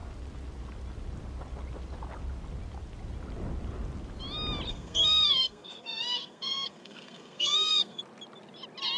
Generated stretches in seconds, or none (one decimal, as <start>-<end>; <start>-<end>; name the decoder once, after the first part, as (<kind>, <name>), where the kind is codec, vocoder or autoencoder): 4.7-8.0 (codec, SNAC)